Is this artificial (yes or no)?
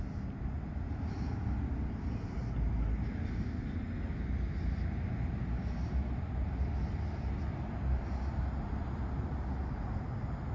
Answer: no